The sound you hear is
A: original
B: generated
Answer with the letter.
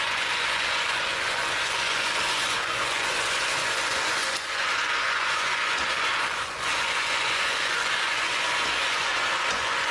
B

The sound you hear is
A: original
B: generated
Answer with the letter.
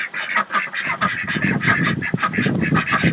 A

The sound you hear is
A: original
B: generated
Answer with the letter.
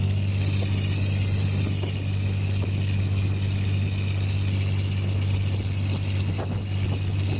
A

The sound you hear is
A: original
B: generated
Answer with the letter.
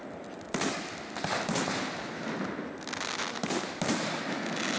A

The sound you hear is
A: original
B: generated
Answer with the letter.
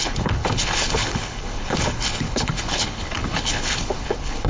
B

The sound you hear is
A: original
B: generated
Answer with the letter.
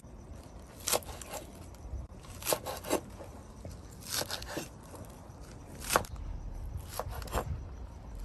A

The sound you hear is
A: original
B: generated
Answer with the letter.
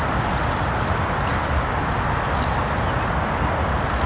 A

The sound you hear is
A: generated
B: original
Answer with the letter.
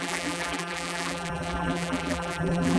A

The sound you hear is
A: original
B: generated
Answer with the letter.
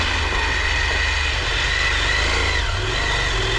A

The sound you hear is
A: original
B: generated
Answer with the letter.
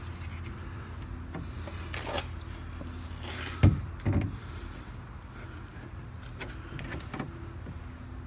A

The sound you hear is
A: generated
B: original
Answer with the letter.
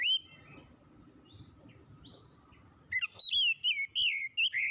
B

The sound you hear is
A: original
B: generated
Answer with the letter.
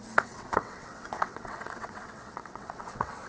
B